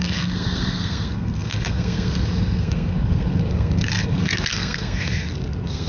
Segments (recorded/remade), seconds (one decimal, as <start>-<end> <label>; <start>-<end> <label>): 0.0-5.9 remade